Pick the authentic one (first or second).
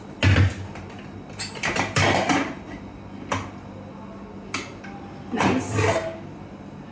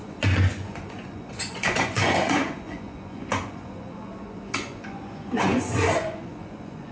first